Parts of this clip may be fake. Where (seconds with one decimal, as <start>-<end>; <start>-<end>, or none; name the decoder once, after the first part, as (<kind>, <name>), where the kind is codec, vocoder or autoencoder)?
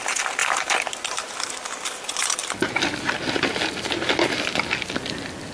0.4-1.4 (vocoder, BigVGAN v2)